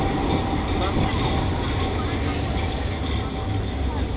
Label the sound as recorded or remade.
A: recorded